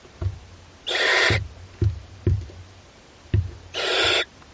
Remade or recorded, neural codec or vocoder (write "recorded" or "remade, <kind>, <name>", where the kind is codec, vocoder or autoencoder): remade, vocoder, BigVGAN v2